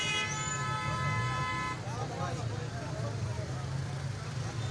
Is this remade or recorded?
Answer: recorded